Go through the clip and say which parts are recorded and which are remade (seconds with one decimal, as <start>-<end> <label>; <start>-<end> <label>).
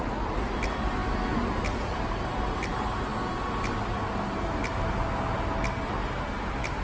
0.0-6.8 recorded